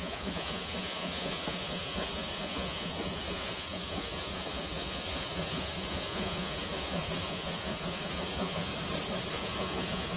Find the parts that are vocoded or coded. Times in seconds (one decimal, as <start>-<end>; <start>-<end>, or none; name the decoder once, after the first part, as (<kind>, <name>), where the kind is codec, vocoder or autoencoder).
0.0-8.7 (vocoder, Vocos); 9.3-10.2